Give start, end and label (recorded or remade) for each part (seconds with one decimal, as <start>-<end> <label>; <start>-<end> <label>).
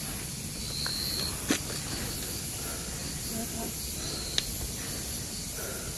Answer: 0.0-0.9 recorded; 0.9-1.8 remade; 1.8-6.0 recorded